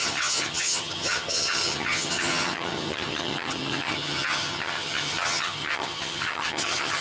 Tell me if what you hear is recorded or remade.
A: remade